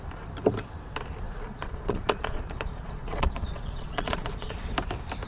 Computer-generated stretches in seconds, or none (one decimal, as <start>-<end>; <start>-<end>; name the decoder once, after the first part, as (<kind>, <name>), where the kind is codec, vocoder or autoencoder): 1.5-4.7 (vocoder, Vocos)